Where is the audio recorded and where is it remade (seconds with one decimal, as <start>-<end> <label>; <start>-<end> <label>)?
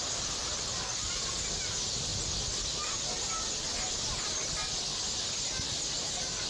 0.0-6.5 recorded